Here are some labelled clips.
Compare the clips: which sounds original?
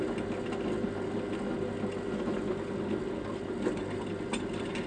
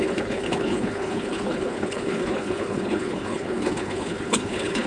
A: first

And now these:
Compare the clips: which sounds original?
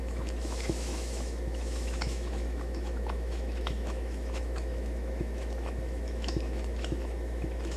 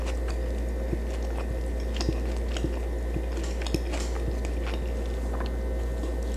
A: second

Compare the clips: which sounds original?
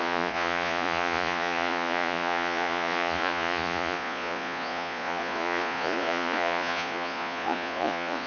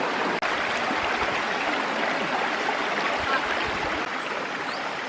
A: second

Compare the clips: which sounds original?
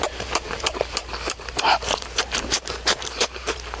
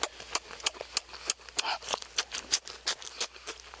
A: second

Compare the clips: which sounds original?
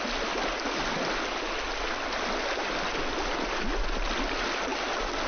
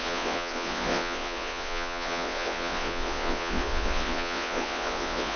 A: first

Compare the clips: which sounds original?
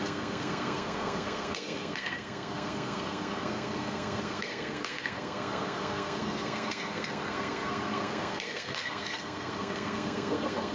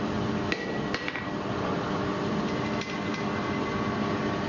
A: second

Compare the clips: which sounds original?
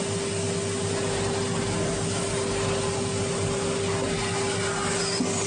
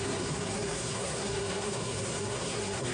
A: first